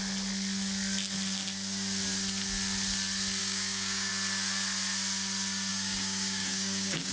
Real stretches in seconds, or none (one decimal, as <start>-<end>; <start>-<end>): 0.0-3.4; 4.1-5.7